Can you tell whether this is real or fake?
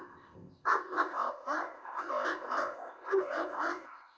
fake